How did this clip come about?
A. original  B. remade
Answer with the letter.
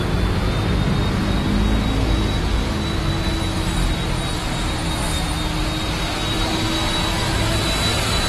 A